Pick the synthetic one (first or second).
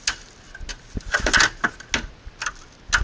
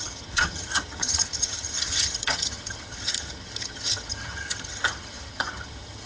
second